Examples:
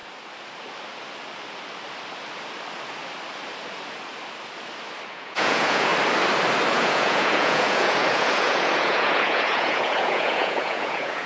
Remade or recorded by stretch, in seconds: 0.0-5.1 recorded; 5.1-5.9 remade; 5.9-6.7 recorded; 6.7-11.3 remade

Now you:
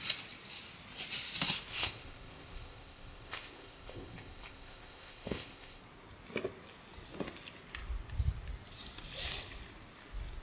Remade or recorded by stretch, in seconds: 0.0-1.7 recorded; 1.7-5.8 remade; 5.8-10.4 recorded

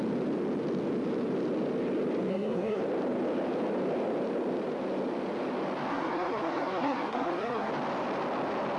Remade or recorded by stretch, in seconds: 0.0-2.3 recorded; 2.3-2.8 remade; 2.8-5.9 recorded; 5.9-7.7 remade; 7.7-8.8 recorded

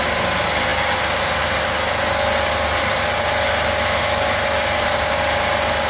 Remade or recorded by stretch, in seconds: 0.0-5.9 recorded

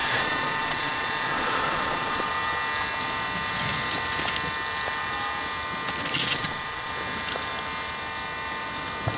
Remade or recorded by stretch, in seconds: 0.0-2.3 remade; 2.3-6.2 recorded; 6.2-6.9 remade; 6.9-9.2 recorded

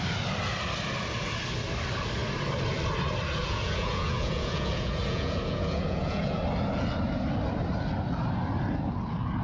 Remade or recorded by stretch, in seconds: 0.0-3.4 recorded; 3.4-6.4 remade; 6.4-9.4 recorded

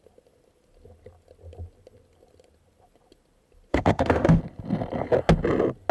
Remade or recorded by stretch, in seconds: 0.0-3.7 recorded; 3.7-4.4 remade; 4.4-5.9 recorded